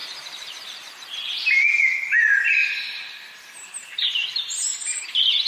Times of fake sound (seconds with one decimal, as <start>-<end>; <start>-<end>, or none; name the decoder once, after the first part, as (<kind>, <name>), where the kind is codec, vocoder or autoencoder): 0.0-1.6 (vocoder, BigVGAN v2); 2.6-5.0